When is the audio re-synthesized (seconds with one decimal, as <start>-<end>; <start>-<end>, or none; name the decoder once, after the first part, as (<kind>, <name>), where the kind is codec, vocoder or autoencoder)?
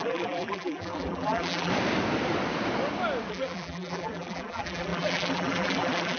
0.0-1.7 (vocoder, BigVGAN v2); 3.3-6.2